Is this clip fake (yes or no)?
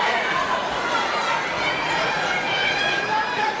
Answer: yes